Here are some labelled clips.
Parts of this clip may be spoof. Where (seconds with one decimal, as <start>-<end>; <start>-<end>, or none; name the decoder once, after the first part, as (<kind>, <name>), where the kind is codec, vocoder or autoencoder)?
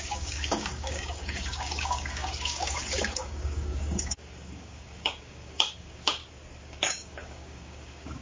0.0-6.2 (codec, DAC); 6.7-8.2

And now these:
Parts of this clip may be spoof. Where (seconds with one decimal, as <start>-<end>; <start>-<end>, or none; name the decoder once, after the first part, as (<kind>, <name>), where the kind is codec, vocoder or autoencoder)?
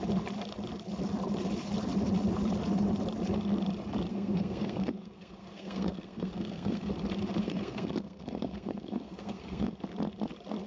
4.1-6.9 (codec, SNAC); 7.4-9.8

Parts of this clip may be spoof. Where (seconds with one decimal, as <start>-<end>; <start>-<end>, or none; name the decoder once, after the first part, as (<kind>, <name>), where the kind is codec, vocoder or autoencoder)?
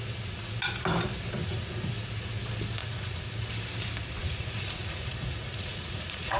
1.4-1.9 (vocoder, Vocos); 2.8-3.5; 4.2-6.4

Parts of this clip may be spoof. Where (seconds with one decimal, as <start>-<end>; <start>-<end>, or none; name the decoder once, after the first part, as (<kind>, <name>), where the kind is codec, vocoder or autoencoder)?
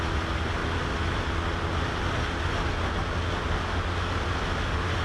none